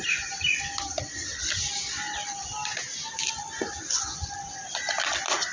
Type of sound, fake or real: real